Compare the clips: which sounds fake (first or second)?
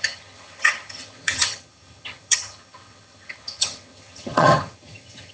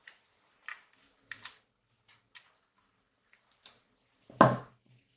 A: first